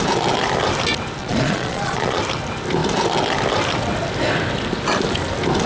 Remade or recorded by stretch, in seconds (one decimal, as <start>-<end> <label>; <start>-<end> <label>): 0.0-1.2 recorded; 1.2-2.2 remade; 2.2-5.7 recorded